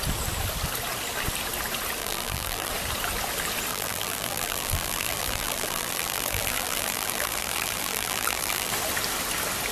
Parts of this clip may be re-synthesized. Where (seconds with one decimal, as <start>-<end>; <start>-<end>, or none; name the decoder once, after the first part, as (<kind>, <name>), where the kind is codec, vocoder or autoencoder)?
2.0-2.7 (vocoder, BigVGAN v2); 3.7-8.7